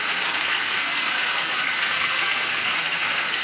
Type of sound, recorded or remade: remade